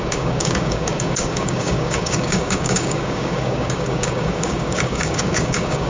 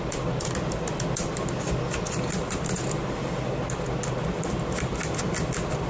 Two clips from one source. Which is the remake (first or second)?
first